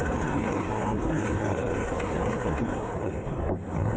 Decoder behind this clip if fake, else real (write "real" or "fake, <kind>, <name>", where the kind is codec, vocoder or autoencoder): fake, codec, SNAC